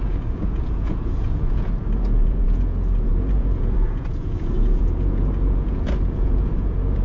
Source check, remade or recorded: remade